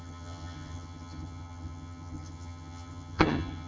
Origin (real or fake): fake